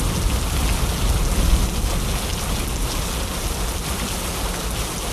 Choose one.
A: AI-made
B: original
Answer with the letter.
B